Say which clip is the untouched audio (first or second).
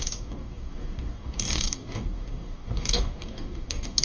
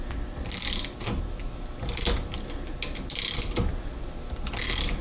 second